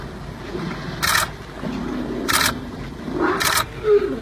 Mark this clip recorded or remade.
recorded